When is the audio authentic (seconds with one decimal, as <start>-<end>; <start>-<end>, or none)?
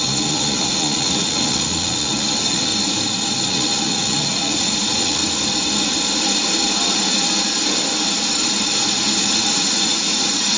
2.7-3.5; 5.2-9.2